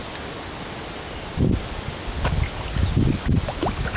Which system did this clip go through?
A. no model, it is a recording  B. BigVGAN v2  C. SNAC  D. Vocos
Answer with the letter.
A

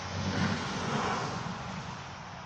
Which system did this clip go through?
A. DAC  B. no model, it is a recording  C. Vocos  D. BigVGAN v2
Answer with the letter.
C